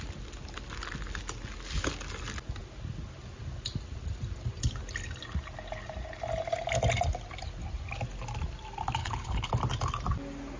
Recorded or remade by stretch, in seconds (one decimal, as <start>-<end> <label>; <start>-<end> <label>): 0.0-9.0 recorded; 9.0-9.5 remade; 9.5-10.6 recorded